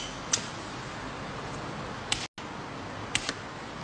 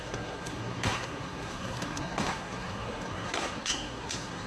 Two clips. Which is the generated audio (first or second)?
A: second